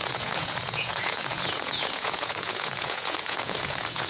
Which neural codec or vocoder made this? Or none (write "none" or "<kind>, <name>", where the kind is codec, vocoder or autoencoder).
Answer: vocoder, Vocos